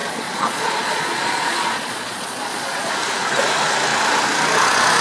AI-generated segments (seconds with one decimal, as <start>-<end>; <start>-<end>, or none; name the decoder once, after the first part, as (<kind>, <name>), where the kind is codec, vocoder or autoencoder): 0.0-2.9 (vocoder, Vocos)